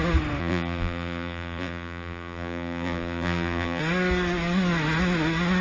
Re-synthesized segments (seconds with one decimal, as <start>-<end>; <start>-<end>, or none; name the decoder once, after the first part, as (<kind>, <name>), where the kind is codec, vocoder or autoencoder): 0.4-3.8 (vocoder, BigVGAN v2)